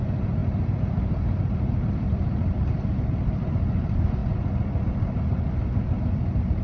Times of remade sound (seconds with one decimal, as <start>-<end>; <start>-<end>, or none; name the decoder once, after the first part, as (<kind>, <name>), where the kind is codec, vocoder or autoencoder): 0.0-4.2 (vocoder, BigVGAN v2); 4.8-6.6